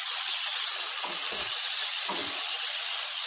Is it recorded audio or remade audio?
remade